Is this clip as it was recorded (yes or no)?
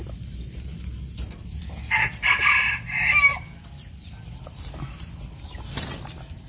no